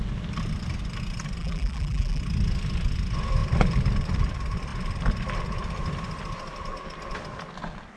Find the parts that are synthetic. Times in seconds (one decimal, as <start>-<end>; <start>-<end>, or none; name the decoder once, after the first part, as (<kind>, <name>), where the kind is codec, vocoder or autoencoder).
1.4-2.2 (vocoder, BigVGAN v2)